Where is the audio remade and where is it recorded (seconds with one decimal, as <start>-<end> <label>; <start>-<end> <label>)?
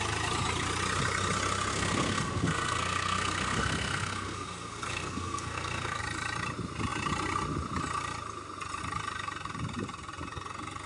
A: 0.0-1.7 recorded; 1.7-6.0 remade; 6.0-10.9 recorded